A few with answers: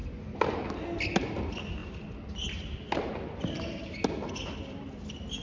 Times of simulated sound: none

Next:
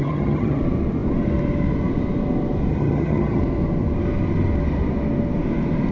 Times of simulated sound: 0.0-0.6; 2.7-3.4

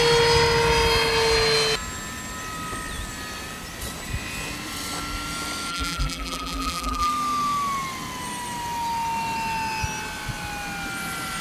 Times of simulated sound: 5.7-7.1

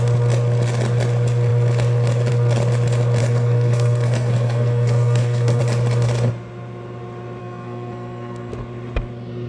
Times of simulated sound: 3.2-5.6; 7.4-8.5

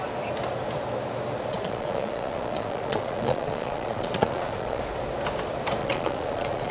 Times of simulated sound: 1.5-4.8; 5.8-6.7

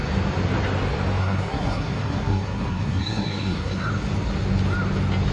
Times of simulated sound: 1.2-3.9

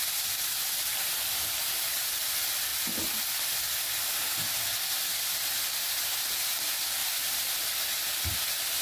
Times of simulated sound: 0.9-2.0; 7.0-8.2